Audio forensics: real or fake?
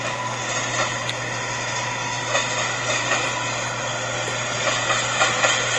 real